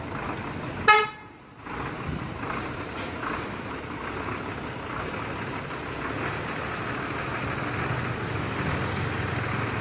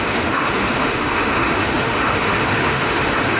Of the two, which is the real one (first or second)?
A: first